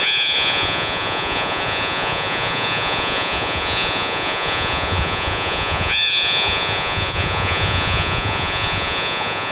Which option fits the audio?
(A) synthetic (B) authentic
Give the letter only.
A